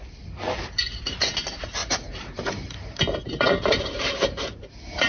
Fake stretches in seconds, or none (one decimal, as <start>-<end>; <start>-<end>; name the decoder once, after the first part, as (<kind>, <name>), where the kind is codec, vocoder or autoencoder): 1.8-5.1 (vocoder, BigVGAN v2)